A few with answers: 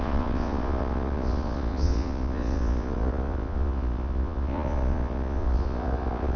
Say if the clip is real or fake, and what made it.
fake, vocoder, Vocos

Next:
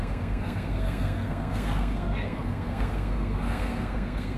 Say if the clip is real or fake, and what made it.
fake, codec, SNAC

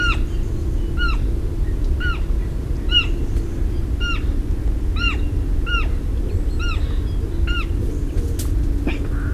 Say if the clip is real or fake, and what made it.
real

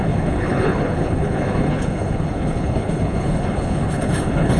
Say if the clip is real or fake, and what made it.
fake, codec, HILCodec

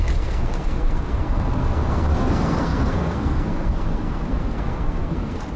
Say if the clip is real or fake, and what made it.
fake, codec, SNAC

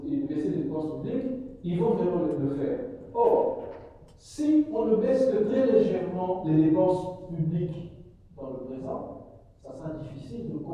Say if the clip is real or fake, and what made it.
real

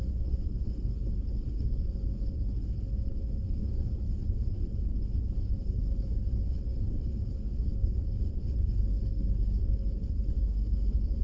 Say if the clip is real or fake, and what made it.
fake, codec, HILCodec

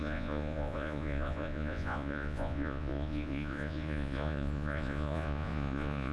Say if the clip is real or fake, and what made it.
fake, vocoder, Vocos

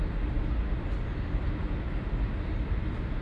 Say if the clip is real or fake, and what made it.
real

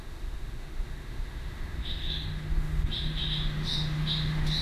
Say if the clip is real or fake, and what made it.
fake, autoencoder, DAC-VAE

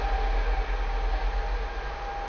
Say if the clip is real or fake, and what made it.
real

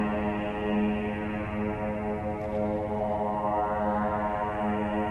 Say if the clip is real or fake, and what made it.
real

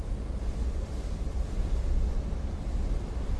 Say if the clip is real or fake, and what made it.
real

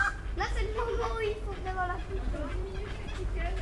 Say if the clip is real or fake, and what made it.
real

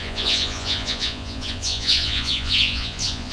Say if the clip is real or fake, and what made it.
fake, vocoder, Vocos